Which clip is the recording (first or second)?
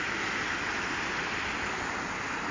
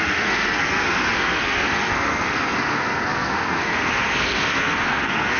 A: first